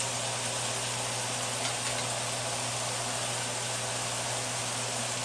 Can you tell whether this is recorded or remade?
recorded